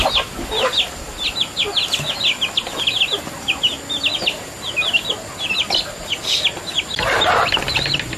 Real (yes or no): yes